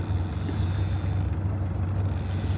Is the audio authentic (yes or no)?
yes